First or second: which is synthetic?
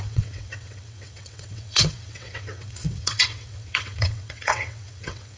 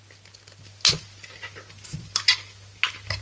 first